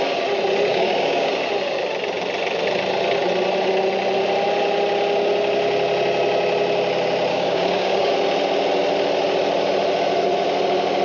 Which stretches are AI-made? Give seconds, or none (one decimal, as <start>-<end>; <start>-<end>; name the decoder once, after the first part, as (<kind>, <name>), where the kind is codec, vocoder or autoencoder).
0.7-1.3 (codec, DAC); 7.3-8.1